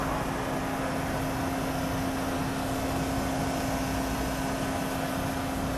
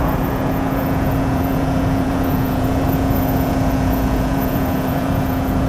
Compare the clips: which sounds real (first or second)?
first